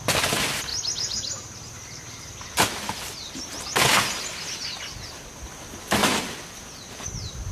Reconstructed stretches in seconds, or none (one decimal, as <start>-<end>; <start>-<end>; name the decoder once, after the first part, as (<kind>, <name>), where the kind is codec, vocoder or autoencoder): 6.0-6.6 (vocoder, BigVGAN v2)